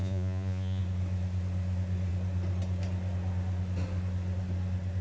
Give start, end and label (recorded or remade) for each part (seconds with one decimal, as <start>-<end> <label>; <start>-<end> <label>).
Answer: 0.0-0.8 remade; 0.8-5.0 recorded